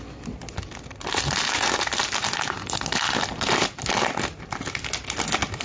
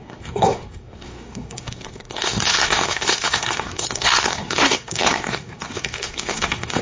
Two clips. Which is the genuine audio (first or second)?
first